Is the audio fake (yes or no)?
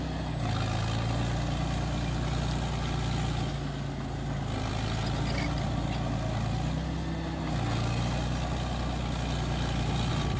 no